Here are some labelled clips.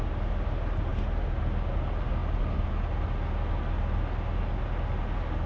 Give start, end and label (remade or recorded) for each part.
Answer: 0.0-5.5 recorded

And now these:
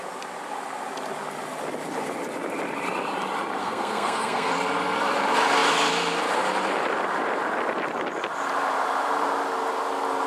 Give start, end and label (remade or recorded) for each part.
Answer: 0.0-3.6 recorded; 3.6-4.5 remade; 4.5-10.3 recorded

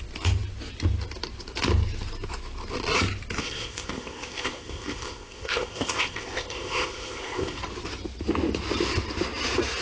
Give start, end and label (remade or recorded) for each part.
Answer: 0.0-3.4 recorded; 3.4-7.6 remade; 7.6-9.8 recorded

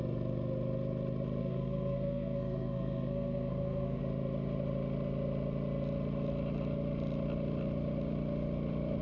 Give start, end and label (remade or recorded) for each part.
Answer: 0.0-1.4 recorded; 1.4-4.0 remade; 4.0-9.0 recorded

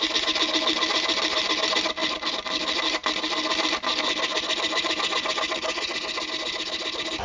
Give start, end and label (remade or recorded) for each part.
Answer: 0.0-7.2 recorded